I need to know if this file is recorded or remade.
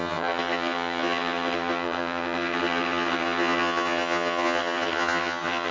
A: remade